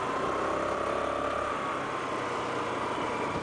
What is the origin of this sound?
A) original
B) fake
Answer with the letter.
A